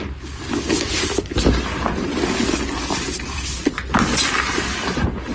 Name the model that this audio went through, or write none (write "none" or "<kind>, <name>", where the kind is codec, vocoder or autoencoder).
none